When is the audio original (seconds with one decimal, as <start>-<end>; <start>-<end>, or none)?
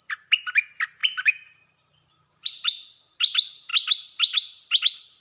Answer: 0.0-1.0; 2.9-5.2